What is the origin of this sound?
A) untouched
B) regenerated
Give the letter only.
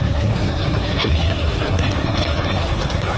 B